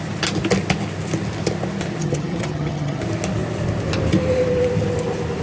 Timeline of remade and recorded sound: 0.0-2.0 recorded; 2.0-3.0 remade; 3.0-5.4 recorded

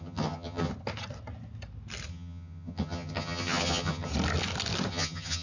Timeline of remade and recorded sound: 0.0-0.7 remade; 0.7-2.1 recorded; 2.1-4.1 remade; 4.1-4.9 recorded; 4.9-5.4 remade

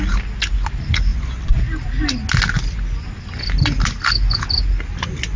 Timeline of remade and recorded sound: 0.0-5.4 recorded

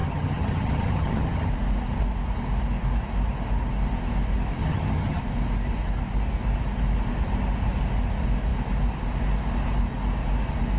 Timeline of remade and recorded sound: 0.0-1.5 remade; 1.5-4.6 recorded; 4.6-5.2 remade; 5.2-10.8 recorded

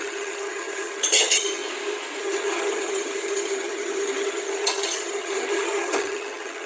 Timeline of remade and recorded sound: 0.0-1.6 remade; 1.6-2.2 recorded; 2.2-6.7 remade

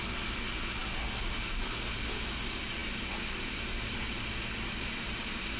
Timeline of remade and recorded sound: 0.0-5.6 recorded

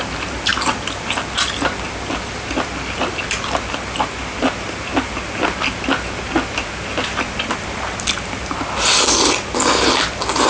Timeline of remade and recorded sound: 0.0-10.5 recorded